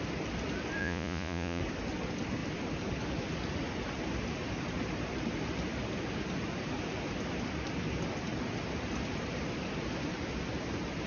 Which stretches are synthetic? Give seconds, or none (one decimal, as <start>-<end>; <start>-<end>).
0.8-1.6